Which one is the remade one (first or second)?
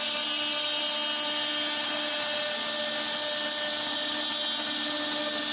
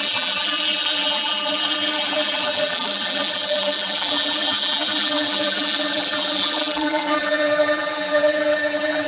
second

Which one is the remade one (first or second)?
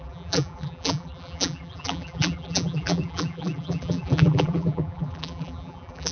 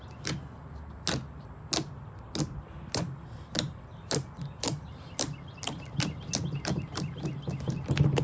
first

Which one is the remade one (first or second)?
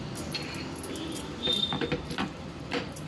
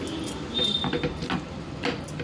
first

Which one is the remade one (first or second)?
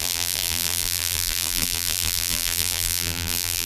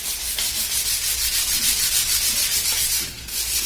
first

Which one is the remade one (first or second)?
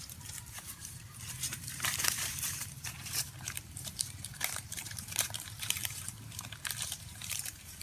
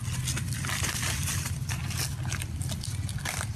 first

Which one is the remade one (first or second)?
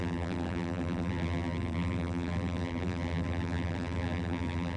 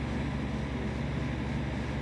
first